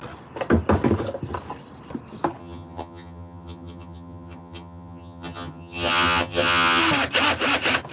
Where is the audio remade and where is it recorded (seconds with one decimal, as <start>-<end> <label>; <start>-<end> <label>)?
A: 0.0-2.4 recorded; 2.4-6.8 remade; 6.8-7.9 recorded